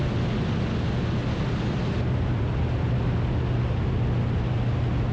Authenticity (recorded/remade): recorded